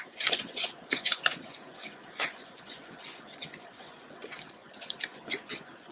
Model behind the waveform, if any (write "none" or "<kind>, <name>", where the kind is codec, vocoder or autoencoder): vocoder, Vocos